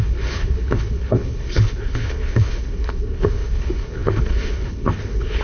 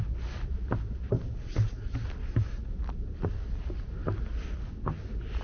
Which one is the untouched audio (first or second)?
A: second